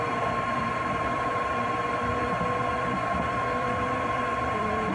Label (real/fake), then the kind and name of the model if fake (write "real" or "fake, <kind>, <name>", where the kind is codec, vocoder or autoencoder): fake, vocoder, BigVGAN v2